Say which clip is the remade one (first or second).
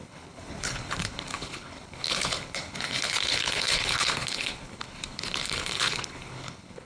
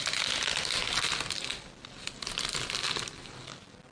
first